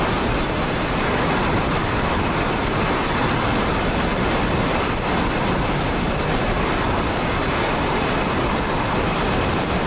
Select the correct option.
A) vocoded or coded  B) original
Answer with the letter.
B